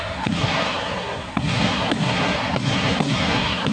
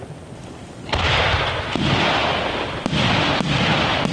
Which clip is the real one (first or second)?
second